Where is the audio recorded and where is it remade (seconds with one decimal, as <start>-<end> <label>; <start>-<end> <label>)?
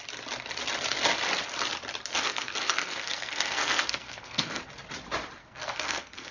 0.0-2.1 recorded; 2.1-4.6 remade; 4.6-5.4 recorded; 5.4-6.3 remade